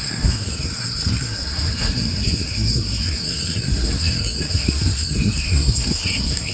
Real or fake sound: fake